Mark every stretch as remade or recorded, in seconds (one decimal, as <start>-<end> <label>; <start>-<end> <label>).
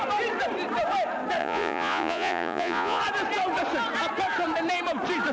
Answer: 0.0-1.4 recorded; 1.4-3.0 remade; 3.0-5.3 recorded